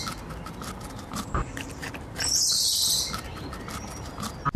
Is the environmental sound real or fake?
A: real